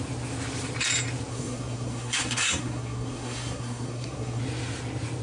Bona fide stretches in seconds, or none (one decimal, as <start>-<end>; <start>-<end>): 0.0-1.3; 4.4-5.2